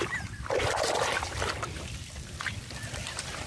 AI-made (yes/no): no